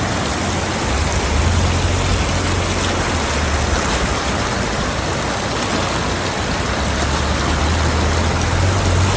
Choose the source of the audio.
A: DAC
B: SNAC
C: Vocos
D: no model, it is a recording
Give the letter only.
D